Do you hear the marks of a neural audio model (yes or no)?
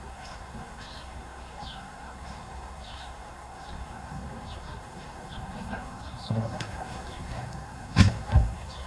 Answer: yes